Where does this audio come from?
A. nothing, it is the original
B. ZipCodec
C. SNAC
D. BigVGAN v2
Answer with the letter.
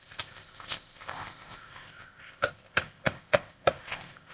B